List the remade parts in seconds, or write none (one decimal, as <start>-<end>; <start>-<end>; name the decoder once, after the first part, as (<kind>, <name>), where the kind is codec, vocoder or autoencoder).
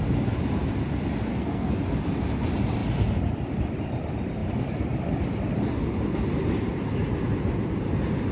1.3-1.8 (codec, SNAC)